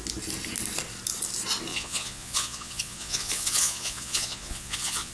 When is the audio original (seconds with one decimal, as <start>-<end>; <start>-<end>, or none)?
0.0-1.7